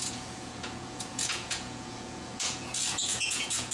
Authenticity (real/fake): fake